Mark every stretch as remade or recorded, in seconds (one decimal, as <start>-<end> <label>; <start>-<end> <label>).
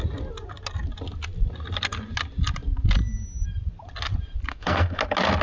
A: 0.0-4.5 recorded; 4.5-5.0 remade; 5.0-5.4 recorded